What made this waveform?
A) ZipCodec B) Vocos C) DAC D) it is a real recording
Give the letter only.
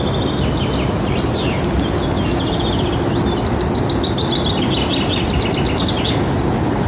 D